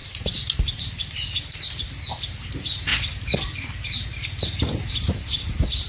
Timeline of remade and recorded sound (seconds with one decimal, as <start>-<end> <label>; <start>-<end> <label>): 0.0-5.9 recorded